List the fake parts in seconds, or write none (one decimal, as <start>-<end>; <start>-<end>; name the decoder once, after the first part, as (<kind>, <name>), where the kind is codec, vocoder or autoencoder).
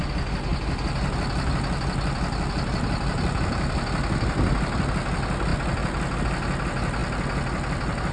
none